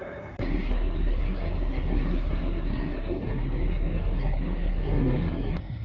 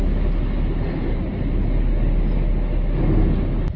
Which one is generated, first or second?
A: first